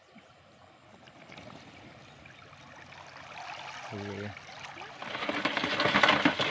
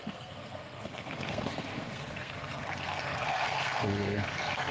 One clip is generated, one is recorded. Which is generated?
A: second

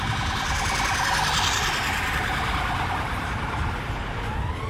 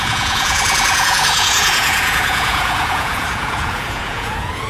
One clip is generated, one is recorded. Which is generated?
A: second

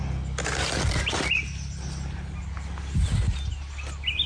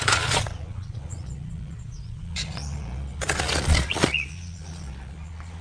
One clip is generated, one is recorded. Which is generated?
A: second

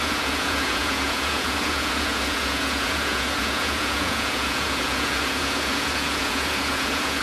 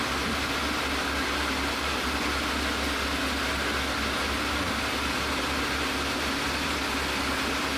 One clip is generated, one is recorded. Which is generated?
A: first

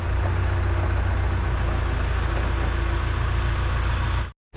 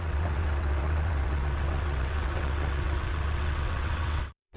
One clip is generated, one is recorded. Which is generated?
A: second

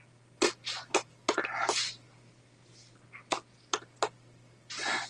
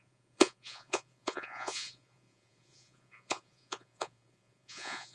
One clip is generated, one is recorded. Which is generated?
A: second